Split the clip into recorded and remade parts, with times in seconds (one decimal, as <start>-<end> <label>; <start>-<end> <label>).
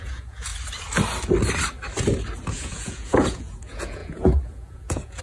0.0-0.5 remade; 0.5-2.5 recorded; 2.5-5.2 remade